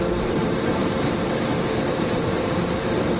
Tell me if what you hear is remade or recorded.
remade